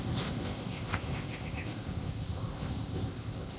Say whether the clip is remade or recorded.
remade